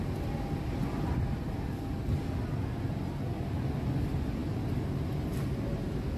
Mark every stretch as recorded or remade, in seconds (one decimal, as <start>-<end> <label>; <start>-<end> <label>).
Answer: 0.0-6.2 recorded

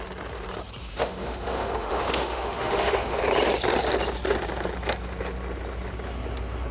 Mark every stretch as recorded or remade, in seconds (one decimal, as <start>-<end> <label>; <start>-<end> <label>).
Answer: 0.0-0.8 recorded; 0.8-3.2 remade; 3.2-6.7 recorded

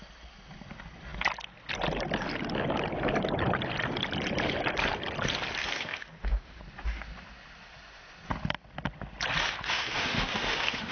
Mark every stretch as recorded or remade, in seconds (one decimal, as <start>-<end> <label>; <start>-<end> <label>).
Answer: 0.0-5.6 recorded; 5.6-6.6 remade; 6.6-9.4 recorded; 9.4-10.9 remade